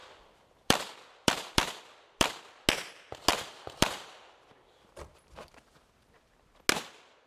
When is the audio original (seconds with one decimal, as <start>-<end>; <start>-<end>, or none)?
2.3-3.3; 5.9-7.3